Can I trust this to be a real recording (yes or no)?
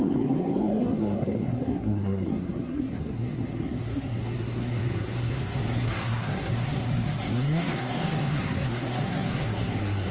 no